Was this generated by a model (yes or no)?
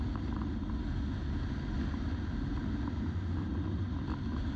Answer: no